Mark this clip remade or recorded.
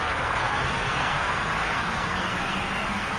remade